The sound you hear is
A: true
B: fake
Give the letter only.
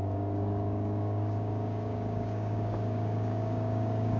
B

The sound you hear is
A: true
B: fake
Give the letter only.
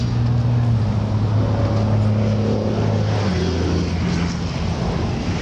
A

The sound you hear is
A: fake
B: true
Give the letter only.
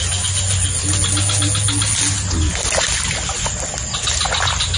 B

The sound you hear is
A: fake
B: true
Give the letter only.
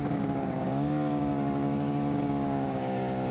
A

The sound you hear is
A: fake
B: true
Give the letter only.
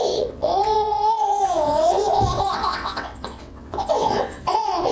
A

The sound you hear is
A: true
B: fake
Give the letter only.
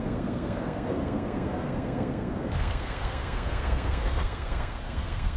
B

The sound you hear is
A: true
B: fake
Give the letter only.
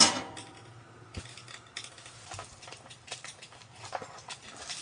B